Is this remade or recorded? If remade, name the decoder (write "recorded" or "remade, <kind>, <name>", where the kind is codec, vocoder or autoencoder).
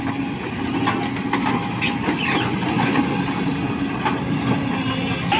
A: recorded